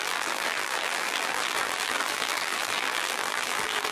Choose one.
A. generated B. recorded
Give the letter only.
A